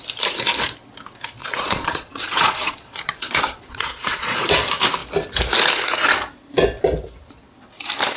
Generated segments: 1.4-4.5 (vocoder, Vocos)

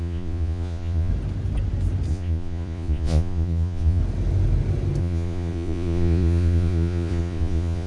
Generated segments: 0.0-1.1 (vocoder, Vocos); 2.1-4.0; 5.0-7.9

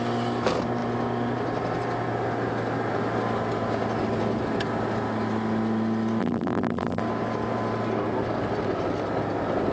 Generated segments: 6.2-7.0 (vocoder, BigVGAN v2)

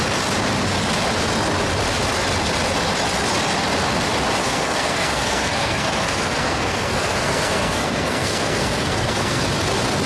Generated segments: 4.4-9.4 (codec, SNAC)